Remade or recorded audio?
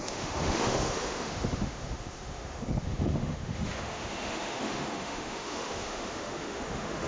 remade